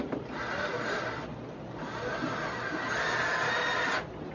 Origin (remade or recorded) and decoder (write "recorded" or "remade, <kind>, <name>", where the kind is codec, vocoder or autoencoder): recorded